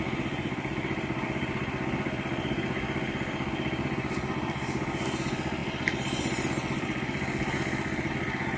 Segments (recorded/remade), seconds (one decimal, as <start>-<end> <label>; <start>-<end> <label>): 0.0-8.6 recorded